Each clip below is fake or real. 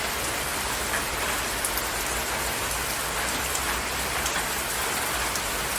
real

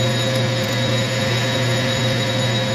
real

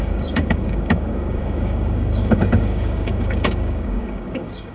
fake